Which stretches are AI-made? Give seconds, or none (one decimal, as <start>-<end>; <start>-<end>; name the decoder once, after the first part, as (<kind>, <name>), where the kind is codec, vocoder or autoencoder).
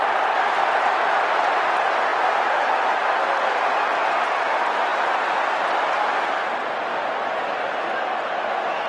none